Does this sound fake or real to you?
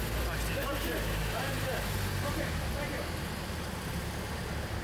real